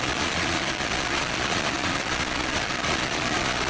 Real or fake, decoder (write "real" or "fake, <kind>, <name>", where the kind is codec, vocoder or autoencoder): fake, vocoder, Vocos